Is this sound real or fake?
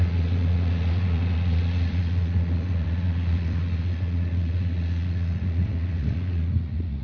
fake